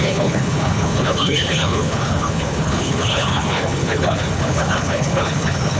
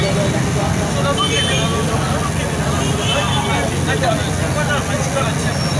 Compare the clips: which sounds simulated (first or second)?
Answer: first